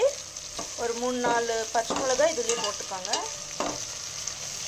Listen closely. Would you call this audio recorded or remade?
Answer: recorded